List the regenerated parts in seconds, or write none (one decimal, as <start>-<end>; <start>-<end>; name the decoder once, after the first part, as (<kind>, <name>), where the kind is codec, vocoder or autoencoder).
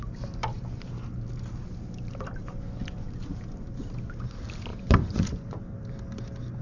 4.7-5.6 (vocoder, Vocos)